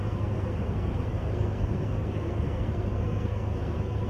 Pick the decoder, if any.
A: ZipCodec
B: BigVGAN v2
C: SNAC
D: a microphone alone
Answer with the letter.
C